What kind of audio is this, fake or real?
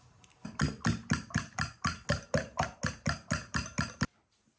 real